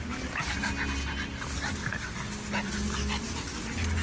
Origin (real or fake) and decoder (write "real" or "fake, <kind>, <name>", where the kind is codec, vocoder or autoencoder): real